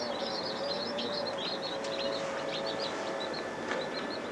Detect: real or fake fake